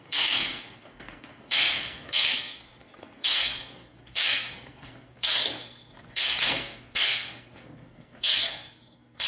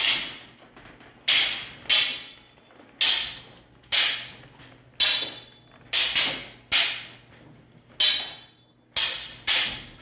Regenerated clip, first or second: first